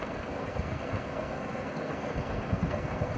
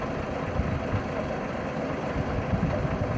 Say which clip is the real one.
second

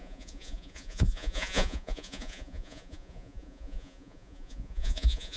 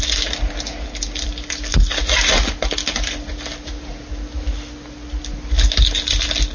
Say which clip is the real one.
second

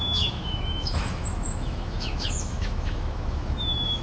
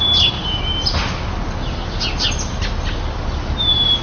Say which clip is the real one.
second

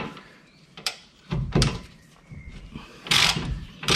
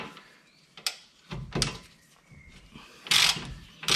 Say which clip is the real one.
second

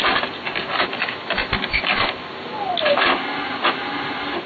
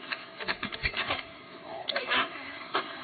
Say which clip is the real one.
first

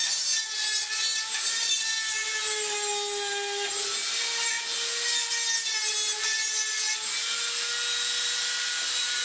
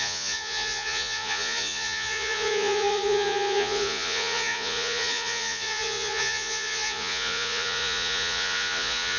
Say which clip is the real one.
first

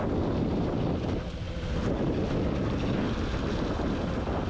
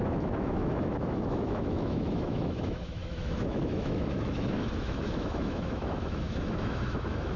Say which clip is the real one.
first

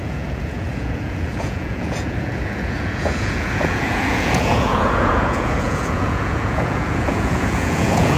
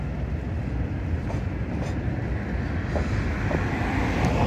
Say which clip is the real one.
second